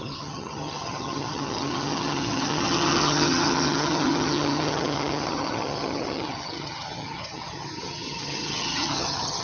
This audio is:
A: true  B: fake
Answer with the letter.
B